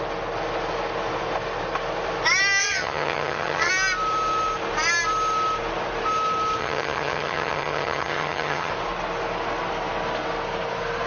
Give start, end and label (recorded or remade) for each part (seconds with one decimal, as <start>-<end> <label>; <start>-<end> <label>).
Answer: 0.0-2.6 recorded; 2.6-3.7 remade; 3.7-6.6 recorded; 6.6-8.7 remade; 8.7-11.1 recorded